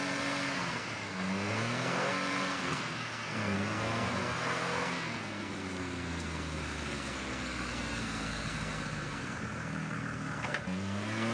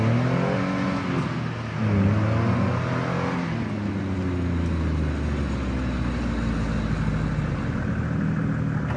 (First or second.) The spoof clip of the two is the first